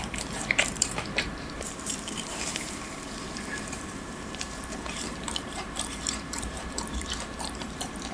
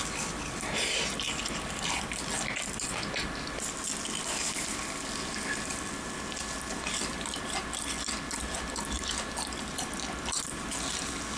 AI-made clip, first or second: first